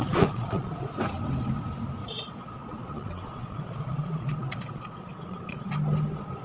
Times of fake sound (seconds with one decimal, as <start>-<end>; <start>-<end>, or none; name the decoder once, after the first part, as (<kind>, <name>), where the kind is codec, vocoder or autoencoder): 0.0-0.9 (vocoder, Vocos); 2.0-5.7